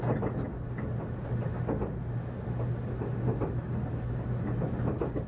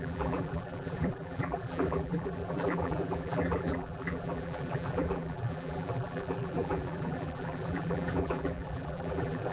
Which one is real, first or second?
first